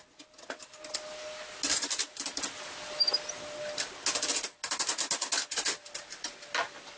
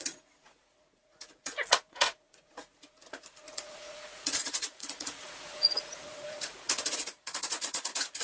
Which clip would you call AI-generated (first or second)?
second